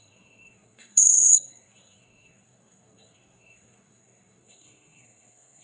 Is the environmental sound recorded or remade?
remade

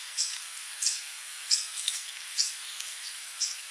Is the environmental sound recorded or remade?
remade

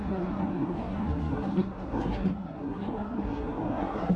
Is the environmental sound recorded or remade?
remade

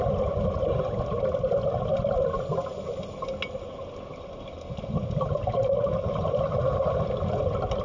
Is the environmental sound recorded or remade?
recorded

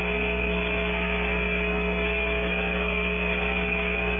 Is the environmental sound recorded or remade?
remade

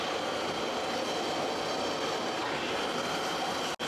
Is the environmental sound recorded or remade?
recorded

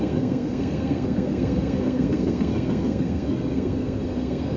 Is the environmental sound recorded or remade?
remade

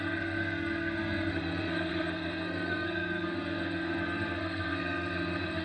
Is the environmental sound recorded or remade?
remade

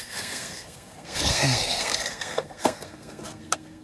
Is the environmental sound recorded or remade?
remade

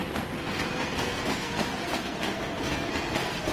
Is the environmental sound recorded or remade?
remade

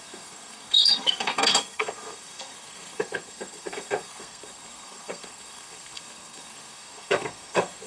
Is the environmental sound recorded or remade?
remade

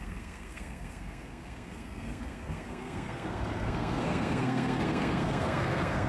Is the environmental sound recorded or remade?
remade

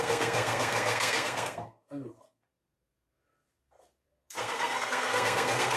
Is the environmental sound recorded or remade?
remade